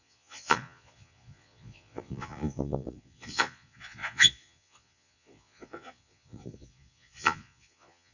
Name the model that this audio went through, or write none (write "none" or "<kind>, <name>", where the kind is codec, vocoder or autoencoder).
vocoder, Vocos